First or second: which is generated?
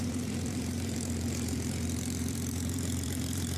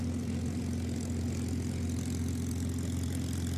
first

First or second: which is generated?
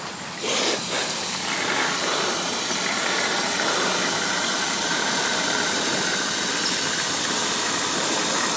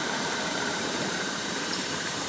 second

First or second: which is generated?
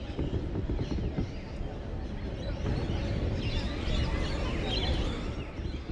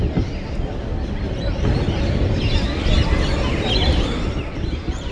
second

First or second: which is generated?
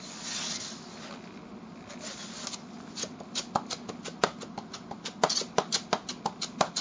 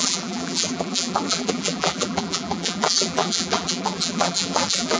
second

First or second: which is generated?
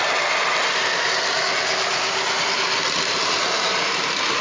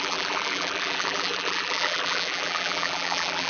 second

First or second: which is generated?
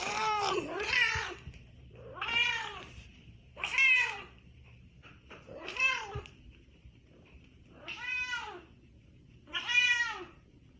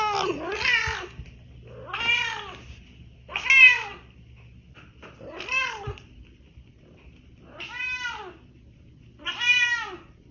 first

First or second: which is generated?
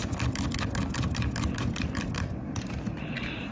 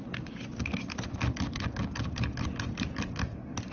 first